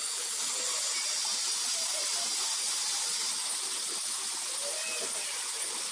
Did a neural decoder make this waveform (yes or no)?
no